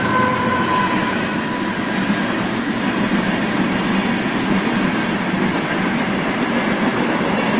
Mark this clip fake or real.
real